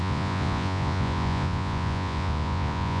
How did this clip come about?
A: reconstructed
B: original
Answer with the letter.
A